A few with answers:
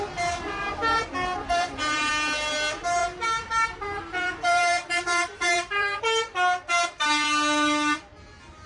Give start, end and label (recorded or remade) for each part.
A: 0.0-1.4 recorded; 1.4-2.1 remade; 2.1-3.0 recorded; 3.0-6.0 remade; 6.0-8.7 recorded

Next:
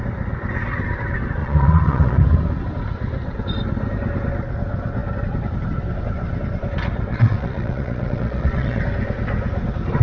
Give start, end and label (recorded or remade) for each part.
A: 0.0-1.4 recorded; 1.4-2.2 remade; 2.2-7.1 recorded; 7.1-8.8 remade; 8.8-10.0 recorded

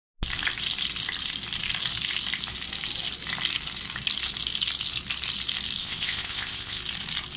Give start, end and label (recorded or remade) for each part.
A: 0.0-5.8 recorded; 5.8-6.8 remade; 6.8-7.4 recorded

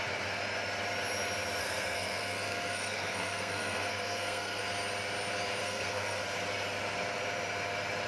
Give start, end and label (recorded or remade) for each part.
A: 0.0-1.6 recorded; 1.6-4.6 remade; 4.6-5.6 recorded; 5.6-6.2 remade; 6.2-8.1 recorded